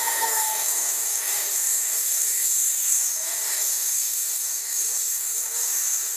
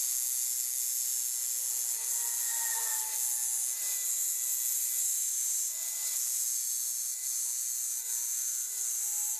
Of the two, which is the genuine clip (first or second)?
second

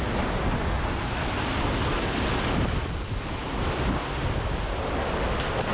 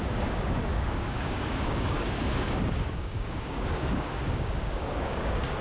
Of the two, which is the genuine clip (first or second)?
first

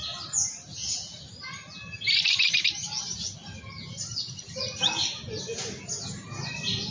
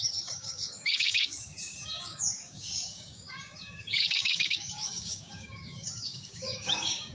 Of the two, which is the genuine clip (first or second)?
first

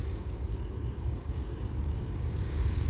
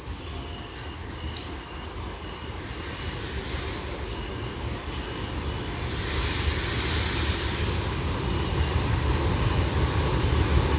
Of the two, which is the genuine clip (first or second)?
second